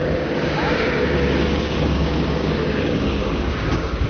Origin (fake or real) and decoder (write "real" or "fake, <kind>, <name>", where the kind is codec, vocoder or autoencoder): fake, codec, DAC